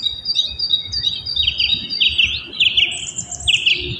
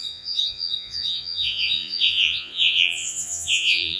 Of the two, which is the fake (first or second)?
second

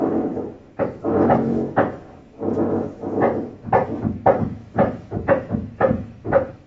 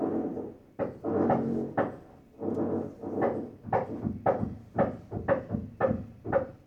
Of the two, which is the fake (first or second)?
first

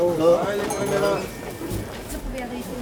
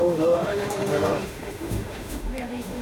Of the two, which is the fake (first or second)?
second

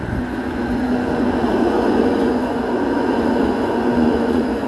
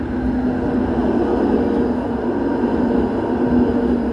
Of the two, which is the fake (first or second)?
first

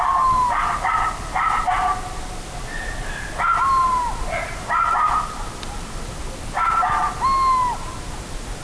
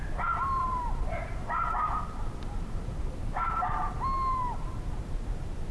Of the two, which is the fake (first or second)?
second